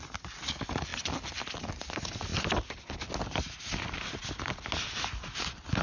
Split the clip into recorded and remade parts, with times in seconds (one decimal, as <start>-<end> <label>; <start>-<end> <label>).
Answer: 0.0-5.8 recorded